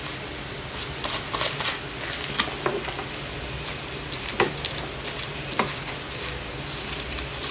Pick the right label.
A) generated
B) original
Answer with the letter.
B